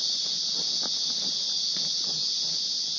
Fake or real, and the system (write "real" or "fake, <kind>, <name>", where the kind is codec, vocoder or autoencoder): real